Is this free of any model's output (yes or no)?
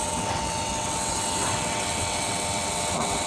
no